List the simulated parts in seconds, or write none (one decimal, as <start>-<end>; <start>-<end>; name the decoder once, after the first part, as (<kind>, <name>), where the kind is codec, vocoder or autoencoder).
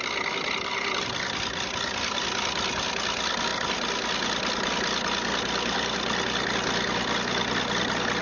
none